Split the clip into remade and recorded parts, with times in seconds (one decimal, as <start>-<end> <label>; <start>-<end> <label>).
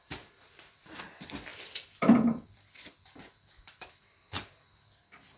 0.0-5.4 remade